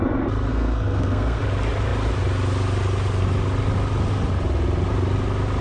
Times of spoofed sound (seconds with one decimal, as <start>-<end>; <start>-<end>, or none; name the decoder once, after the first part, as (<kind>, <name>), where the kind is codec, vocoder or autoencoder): 0.5-1.4 (codec, SNAC)